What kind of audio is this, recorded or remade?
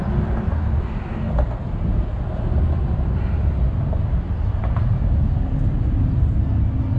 recorded